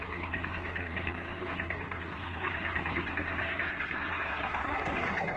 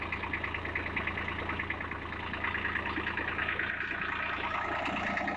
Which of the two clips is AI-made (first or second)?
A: first